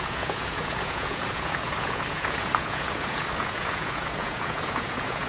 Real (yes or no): no